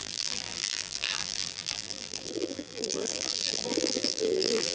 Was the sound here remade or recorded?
remade